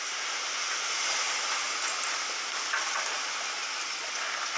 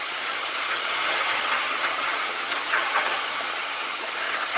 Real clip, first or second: first